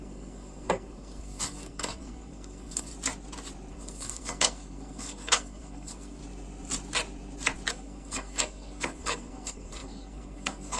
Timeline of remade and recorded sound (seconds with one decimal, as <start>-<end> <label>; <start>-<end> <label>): 0.0-2.9 remade; 2.9-3.7 recorded; 3.7-6.2 remade; 6.2-7.7 recorded; 7.7-10.8 remade